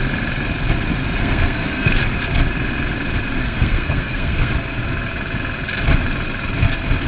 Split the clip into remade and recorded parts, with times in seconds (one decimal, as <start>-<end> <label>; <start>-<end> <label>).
0.0-1.2 recorded; 1.2-2.0 remade; 2.0-3.4 recorded; 3.4-4.5 remade; 4.5-7.1 recorded